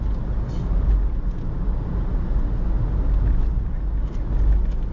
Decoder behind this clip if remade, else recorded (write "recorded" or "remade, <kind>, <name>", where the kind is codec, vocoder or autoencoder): recorded